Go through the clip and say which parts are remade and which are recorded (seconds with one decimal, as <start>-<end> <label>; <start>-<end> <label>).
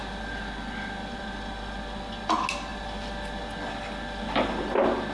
0.0-5.1 recorded